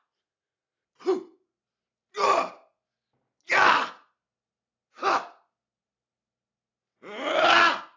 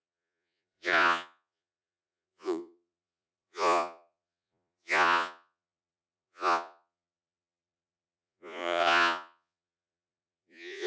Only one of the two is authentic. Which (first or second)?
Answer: first